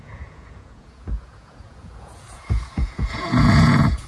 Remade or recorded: remade